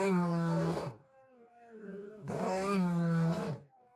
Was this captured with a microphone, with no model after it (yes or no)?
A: no